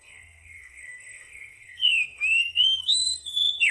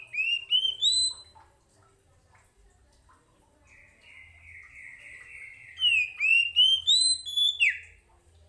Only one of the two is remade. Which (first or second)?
first